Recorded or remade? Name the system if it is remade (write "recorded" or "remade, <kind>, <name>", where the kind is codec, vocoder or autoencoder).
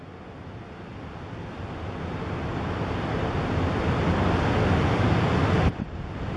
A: recorded